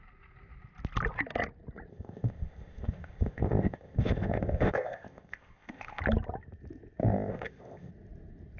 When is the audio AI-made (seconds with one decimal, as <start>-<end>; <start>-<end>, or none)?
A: 1.9-6.0; 7.0-7.9

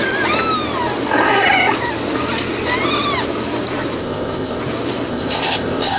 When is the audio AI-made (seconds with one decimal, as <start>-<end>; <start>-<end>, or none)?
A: 4.0-4.6; 5.1-6.0

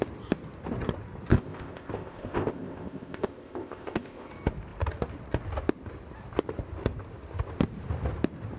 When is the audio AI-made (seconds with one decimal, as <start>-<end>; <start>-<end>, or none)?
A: 1.3-4.3

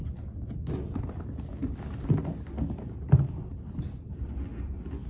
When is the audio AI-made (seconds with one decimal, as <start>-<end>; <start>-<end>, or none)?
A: none

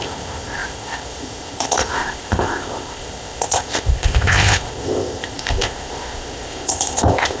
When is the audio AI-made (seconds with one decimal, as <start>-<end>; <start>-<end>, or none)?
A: 0.0-7.4

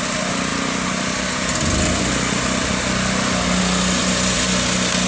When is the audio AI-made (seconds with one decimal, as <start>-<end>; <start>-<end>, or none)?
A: none